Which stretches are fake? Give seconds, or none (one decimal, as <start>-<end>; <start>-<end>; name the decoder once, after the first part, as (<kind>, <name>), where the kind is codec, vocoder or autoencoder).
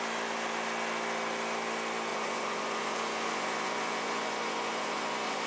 2.1-5.5 (vocoder, Vocos)